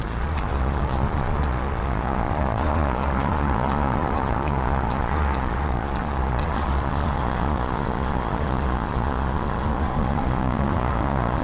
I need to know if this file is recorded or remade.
remade